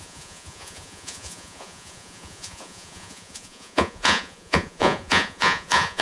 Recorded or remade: remade